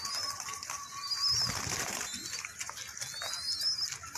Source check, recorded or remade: recorded